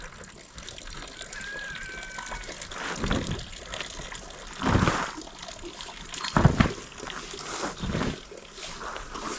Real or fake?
real